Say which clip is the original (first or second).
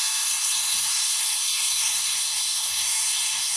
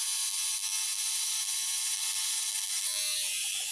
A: second